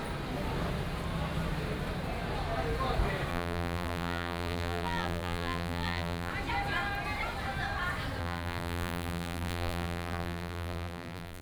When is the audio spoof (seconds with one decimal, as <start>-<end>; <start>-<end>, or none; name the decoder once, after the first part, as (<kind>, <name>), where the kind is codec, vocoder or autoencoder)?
3.3-6.3 (vocoder, BigVGAN v2); 8.2-11.4